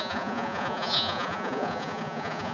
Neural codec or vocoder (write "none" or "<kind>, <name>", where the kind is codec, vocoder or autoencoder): vocoder, Vocos